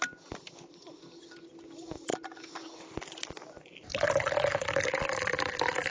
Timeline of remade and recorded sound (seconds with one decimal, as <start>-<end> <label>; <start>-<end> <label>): 0.0-5.9 recorded